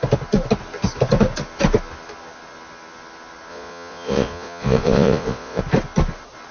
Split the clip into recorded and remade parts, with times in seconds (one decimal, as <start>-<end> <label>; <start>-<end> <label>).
0.0-3.5 recorded; 3.5-5.6 remade; 5.6-6.5 recorded